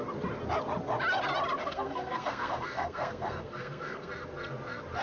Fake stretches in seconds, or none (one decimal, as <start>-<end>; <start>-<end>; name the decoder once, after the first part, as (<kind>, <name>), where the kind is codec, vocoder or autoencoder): 1.6-4.1 (codec, SNAC)